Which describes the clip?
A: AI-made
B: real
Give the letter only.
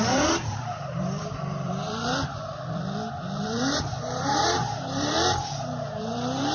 A